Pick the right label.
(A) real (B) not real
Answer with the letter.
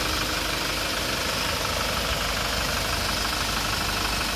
A